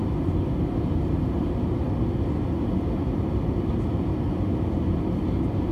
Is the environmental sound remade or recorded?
recorded